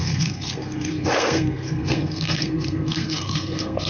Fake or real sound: fake